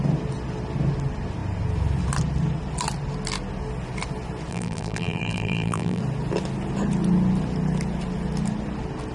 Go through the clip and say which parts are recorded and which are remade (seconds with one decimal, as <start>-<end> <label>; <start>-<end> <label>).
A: 0.0-4.5 recorded; 4.5-6.0 remade; 6.0-9.1 recorded